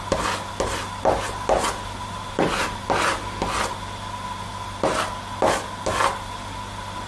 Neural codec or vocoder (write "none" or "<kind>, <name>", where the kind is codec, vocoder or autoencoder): none